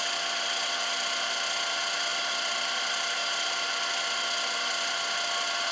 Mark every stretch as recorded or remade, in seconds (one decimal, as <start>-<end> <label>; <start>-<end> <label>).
0.0-3.2 remade; 3.2-3.9 recorded; 3.9-5.7 remade

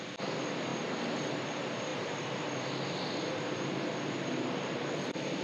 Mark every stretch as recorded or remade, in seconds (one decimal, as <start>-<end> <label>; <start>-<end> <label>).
0.0-1.9 recorded; 1.9-5.4 remade

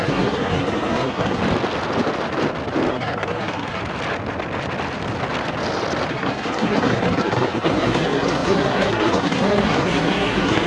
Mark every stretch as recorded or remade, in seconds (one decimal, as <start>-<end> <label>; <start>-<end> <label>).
0.0-1.4 remade; 1.4-2.9 recorded; 2.9-3.8 remade; 3.8-6.1 recorded; 6.1-10.7 remade

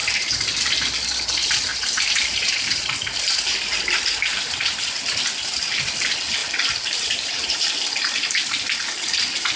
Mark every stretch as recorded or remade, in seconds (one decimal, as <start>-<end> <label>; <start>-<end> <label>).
0.0-0.6 remade; 0.6-1.7 recorded; 1.7-2.8 remade; 2.8-3.7 recorded; 3.7-4.4 remade; 4.4-6.4 recorded; 6.4-7.7 remade; 7.7-9.6 recorded

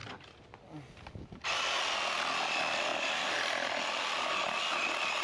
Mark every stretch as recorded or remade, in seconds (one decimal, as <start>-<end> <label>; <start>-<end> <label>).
0.0-5.2 recorded

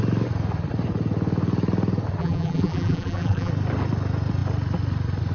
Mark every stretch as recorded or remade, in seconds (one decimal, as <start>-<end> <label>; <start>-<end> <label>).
0.0-2.2 recorded; 2.2-3.5 remade; 3.5-5.3 recorded

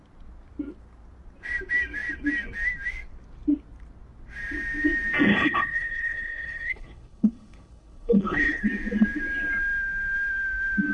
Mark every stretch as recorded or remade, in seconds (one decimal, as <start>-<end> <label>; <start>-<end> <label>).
0.0-5.3 recorded; 5.3-8.7 remade; 8.7-10.9 recorded